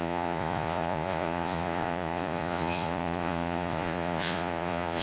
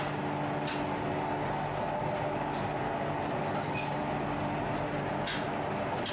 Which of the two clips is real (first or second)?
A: second